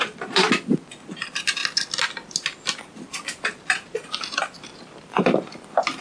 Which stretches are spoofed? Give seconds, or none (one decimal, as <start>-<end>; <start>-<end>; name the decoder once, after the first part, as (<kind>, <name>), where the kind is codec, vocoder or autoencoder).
none